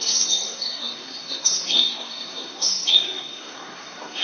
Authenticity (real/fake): fake